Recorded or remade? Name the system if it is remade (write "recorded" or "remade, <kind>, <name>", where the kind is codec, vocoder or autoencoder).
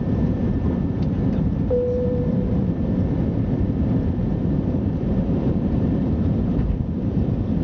remade, vocoder, BigVGAN v2